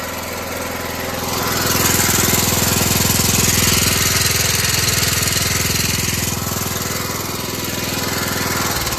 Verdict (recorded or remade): recorded